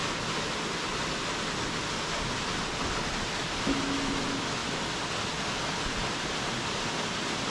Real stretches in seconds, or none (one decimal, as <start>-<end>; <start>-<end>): 0.0-7.5